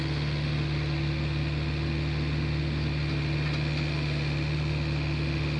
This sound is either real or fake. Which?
real